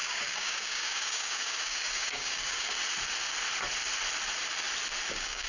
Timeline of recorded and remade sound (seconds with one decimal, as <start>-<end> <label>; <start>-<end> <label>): 0.0-2.8 remade; 2.8-5.1 recorded; 5.1-5.5 remade